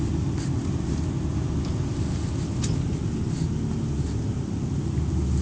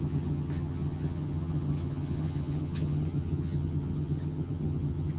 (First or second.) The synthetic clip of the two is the second